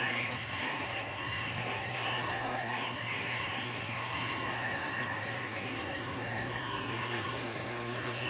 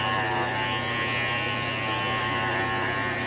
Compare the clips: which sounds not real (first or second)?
first